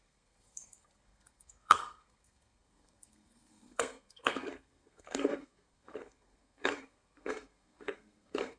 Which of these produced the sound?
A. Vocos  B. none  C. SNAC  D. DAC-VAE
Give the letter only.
C